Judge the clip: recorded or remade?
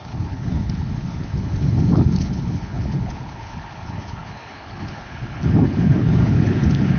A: remade